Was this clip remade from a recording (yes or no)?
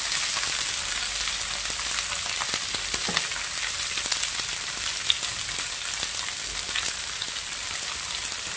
no